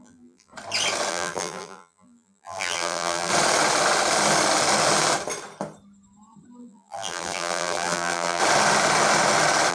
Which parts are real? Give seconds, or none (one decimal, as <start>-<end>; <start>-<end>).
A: 0.5-1.1; 3.3-6.6; 8.4-9.7